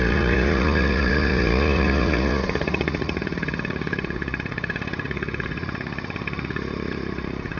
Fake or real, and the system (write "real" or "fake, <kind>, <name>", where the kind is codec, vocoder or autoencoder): fake, vocoder, Vocos